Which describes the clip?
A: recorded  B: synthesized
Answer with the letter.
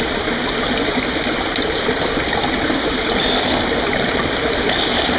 A